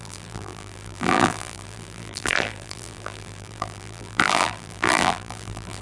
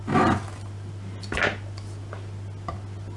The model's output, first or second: first